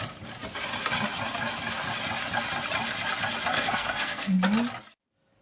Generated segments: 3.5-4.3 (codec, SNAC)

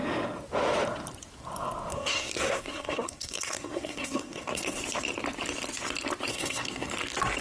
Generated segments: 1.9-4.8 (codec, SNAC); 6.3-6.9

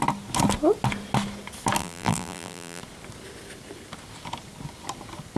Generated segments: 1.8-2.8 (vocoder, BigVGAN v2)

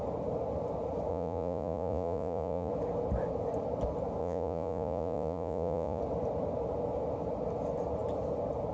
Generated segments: 1.1-2.7 (vocoder, Vocos); 4.2-6.0

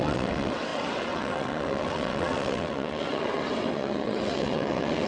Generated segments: 0.0-5.1 (vocoder, WaveNeXt)

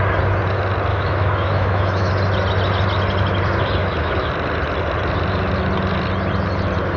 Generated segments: 0.9-2.1 (autoencoder, DAC-VAE); 3.8-4.3

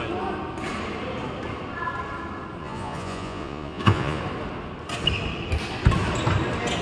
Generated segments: 2.6-4.2 (vocoder, Vocos)